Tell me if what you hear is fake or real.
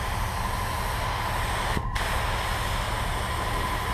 real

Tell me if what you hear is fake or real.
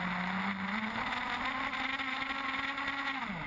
real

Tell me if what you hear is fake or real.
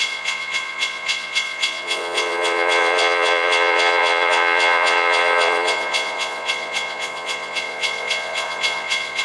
fake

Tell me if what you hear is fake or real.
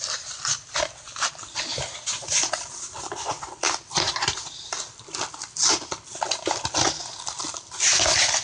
real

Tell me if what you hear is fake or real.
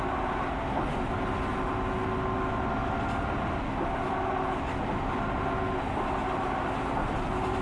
real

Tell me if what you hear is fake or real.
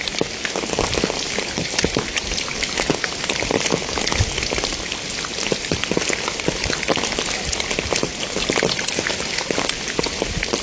real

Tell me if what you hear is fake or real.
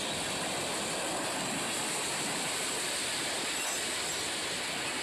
real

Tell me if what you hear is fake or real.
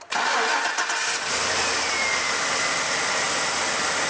real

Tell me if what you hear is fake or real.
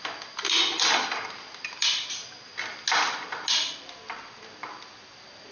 real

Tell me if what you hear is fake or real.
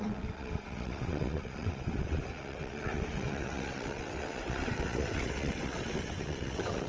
fake